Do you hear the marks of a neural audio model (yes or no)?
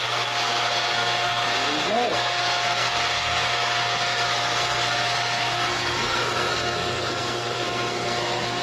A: yes